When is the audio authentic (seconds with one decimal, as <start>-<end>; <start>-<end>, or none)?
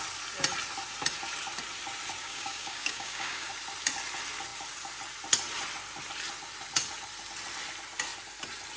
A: 0.0-2.2; 3.5-8.8